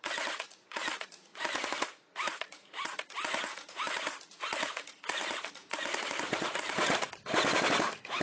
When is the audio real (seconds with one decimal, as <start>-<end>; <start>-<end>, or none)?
none